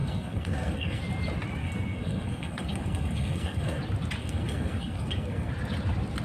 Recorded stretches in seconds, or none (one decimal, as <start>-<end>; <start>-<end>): 1.0-1.6; 3.8-4.2; 5.5-6.2